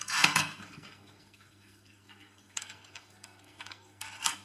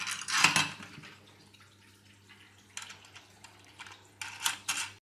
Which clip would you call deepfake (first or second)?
first